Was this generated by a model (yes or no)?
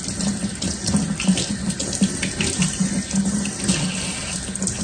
no